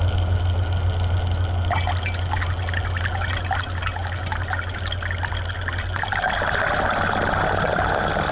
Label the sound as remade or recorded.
recorded